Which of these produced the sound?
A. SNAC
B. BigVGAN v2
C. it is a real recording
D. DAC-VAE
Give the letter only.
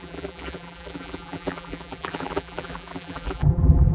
B